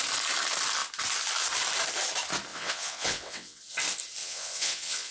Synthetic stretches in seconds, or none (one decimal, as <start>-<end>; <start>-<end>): 2.5-3.6; 4.2-5.1